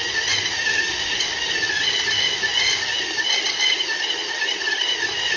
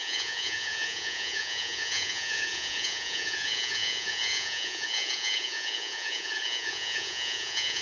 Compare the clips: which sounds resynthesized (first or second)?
second